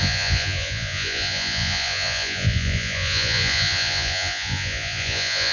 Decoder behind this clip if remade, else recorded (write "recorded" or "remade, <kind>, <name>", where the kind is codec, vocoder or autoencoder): remade, vocoder, Vocos